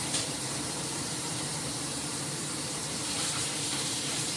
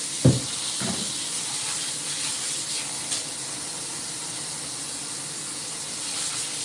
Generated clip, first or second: first